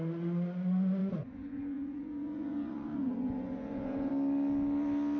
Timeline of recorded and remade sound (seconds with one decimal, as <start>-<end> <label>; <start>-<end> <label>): 0.0-1.0 recorded; 1.0-4.1 remade; 4.1-5.2 recorded